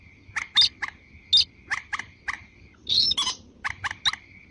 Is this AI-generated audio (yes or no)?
no